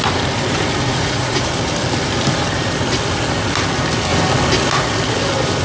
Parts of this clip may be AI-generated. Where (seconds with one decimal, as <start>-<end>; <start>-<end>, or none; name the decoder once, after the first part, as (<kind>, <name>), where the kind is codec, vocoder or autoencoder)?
0.8-1.5 (vocoder, Vocos)